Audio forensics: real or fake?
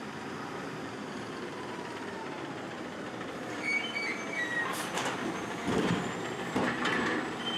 fake